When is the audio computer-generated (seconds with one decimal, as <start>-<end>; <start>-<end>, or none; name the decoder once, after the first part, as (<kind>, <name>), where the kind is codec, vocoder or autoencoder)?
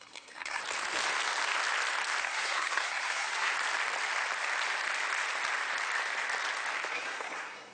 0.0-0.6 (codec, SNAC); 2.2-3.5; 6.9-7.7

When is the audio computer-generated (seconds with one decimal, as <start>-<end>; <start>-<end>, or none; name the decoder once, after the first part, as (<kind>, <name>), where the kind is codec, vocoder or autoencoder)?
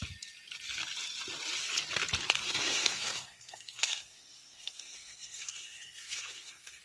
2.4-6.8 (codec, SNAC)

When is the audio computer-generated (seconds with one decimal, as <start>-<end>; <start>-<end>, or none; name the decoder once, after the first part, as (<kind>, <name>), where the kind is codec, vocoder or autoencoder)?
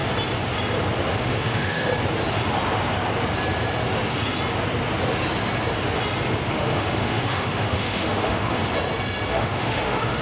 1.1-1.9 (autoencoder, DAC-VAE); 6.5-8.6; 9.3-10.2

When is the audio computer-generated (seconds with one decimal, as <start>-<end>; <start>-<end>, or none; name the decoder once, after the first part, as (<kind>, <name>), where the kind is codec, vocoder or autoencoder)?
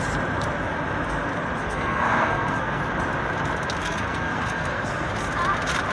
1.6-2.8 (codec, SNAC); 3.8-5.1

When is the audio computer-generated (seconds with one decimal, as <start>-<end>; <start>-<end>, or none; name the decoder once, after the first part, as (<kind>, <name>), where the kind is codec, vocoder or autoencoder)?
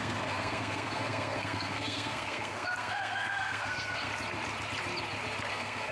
0.0-4.1 (codec, SNAC); 5.5-5.9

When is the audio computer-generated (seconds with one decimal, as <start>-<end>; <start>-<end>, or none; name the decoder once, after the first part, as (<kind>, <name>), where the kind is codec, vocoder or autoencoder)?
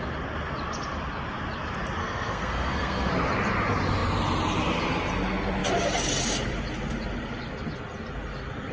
2.0-3.1 (codec, SNAC)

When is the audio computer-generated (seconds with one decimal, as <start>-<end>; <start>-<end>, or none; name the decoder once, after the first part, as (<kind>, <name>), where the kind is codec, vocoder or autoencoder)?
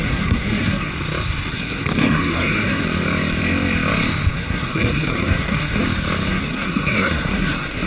0.0-0.9 (codec, SNAC); 1.5-2.8; 4.3-5.8; 6.3-7.9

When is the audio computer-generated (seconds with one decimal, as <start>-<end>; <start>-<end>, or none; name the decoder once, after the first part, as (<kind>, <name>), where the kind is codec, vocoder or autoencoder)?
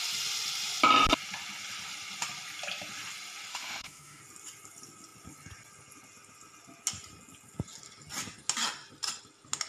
3.5-4.2 (autoencoder, DAC-VAE)